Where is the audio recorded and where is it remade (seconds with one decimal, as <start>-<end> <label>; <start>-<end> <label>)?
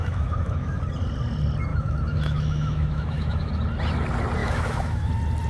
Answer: 0.0-0.8 remade; 0.8-1.7 recorded; 1.7-3.5 remade; 3.5-4.4 recorded; 4.4-5.1 remade; 5.1-5.5 recorded